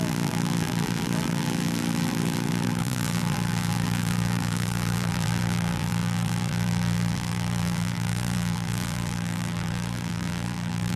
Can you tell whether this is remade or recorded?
remade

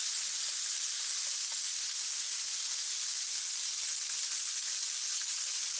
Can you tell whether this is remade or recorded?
recorded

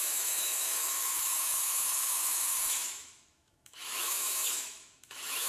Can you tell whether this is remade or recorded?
remade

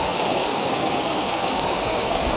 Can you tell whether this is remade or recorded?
remade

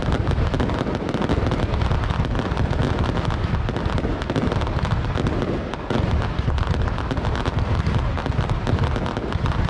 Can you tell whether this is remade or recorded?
recorded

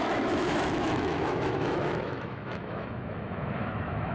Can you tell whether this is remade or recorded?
remade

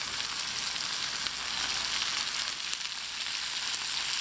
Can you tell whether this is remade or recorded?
recorded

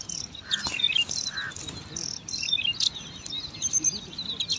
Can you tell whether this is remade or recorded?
recorded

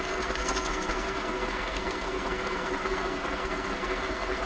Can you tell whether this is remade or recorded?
remade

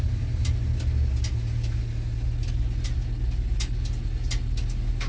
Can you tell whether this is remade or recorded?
recorded